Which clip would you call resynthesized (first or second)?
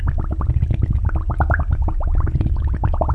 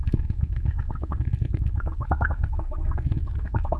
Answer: second